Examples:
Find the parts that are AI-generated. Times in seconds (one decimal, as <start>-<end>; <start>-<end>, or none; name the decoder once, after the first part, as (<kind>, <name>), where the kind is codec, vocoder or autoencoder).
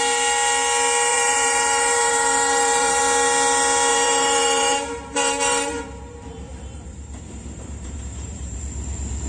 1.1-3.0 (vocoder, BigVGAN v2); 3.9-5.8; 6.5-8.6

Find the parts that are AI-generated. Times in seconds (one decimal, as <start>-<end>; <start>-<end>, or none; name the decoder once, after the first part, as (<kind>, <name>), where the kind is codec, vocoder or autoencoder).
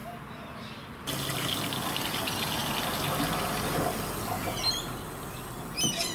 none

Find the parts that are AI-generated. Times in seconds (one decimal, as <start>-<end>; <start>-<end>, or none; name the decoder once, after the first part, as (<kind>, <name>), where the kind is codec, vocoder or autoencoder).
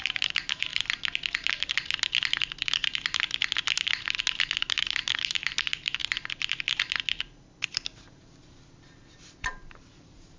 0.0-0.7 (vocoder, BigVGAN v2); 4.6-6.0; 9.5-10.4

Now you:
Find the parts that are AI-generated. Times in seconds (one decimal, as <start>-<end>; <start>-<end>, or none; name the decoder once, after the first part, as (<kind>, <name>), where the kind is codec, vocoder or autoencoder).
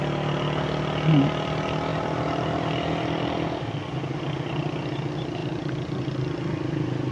1.9-3.7 (vocoder, BigVGAN v2); 5.4-7.1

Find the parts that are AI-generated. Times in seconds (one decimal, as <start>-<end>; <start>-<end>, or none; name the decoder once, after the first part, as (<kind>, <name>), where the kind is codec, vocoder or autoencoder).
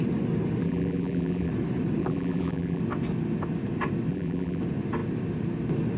0.6-1.5 (vocoder, BigVGAN v2); 2.0-2.8; 4.1-4.6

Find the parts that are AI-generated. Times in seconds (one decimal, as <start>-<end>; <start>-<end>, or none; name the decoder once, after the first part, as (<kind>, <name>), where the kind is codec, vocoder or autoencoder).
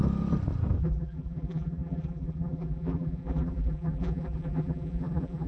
0.8-5.5 (vocoder, BigVGAN v2)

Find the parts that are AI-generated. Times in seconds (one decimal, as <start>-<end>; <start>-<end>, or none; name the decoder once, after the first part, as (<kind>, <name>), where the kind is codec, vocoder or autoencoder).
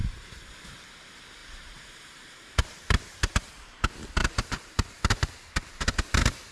0.0-0.5 (vocoder, BigVGAN v2); 1.4-3.5; 4.2-5.7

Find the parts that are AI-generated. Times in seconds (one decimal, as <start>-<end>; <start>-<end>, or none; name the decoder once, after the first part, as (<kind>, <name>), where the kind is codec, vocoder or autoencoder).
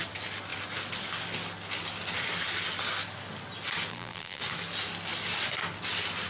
3.9-4.4 (vocoder, BigVGAN v2)